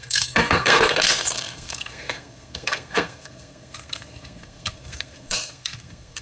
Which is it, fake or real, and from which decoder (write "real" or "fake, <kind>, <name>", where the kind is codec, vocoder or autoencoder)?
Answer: fake, codec, SNAC